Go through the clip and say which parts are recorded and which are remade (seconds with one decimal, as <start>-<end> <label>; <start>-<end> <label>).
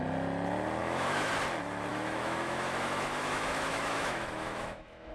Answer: 0.0-0.8 recorded; 0.8-1.3 remade; 1.3-1.9 recorded; 1.9-5.1 remade